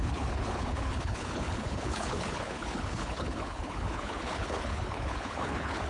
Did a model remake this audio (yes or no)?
yes